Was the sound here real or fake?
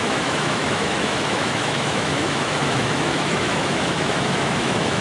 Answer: fake